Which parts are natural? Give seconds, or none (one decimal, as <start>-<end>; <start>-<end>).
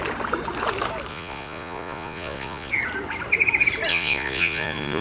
0.0-1.1; 2.7-3.9